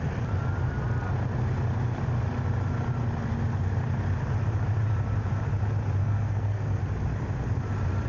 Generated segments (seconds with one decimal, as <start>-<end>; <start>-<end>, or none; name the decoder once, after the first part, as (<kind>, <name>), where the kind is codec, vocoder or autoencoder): 6.0-6.8 (codec, SNAC)

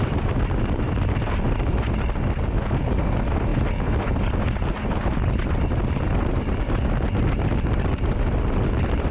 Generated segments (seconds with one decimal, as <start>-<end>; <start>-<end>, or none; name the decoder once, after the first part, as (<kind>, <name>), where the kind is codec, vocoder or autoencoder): none

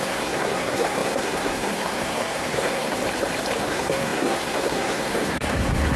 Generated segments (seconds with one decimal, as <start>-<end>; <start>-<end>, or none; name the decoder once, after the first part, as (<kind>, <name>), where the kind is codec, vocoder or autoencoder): 0.0-3.0 (codec, SNAC); 3.6-6.0

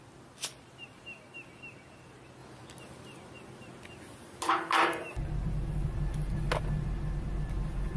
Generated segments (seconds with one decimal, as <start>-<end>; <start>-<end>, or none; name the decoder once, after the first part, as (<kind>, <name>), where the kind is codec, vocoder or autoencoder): none